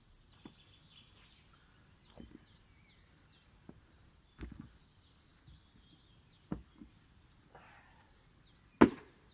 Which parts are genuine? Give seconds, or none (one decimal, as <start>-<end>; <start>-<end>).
0.0-9.3